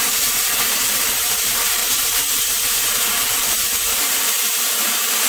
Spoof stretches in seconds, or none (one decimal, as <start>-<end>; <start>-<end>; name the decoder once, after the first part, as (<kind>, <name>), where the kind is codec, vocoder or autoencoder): 0.0-0.4 (vocoder, BigVGAN v2); 1.4-1.8; 3.0-5.3